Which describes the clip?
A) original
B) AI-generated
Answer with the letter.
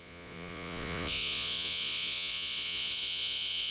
B